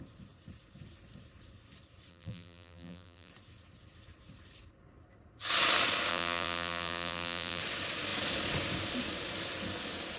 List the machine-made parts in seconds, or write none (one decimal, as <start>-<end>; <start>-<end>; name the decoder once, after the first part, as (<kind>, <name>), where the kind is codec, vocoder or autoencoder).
2.1-3.3 (vocoder, BigVGAN v2); 6.1-7.6

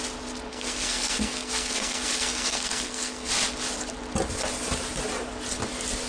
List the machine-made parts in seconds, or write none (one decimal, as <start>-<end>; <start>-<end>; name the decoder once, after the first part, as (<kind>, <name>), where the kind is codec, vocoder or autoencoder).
0.5-3.3 (codec, SNAC)

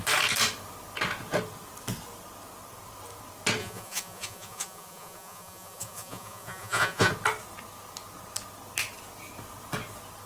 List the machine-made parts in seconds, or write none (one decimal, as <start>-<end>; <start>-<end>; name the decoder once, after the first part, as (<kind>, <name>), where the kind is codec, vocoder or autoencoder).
3.6-7.1 (vocoder, Vocos)

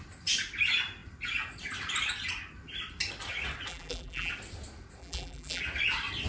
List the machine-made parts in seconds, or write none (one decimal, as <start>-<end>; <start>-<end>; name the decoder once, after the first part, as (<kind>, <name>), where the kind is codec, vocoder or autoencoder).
3.7-4.3 (vocoder, BigVGAN v2); 5.0-5.6

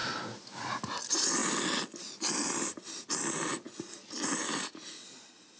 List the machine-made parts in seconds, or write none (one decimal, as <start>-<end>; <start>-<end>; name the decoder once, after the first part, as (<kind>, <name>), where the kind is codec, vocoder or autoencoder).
0.0-1.0 (vocoder, Vocos)

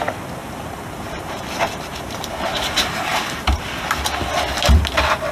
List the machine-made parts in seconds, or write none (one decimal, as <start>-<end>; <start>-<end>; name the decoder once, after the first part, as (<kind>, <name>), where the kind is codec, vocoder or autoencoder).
0.4-3.6 (vocoder, BigVGAN v2)

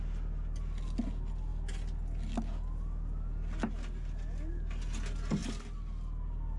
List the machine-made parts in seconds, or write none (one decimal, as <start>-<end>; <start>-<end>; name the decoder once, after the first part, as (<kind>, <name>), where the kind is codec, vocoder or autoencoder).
none

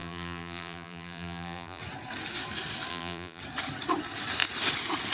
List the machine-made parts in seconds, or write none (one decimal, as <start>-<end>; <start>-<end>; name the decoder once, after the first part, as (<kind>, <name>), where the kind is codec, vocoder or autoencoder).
0.0-1.8 (vocoder, BigVGAN v2); 2.9-3.4